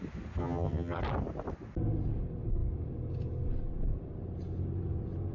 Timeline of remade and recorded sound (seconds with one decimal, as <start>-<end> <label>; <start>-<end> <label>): 0.0-0.4 recorded; 0.4-1.0 remade; 1.0-5.3 recorded